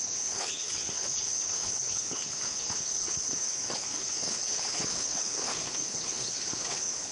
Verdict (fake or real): fake